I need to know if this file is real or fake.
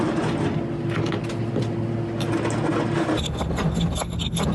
real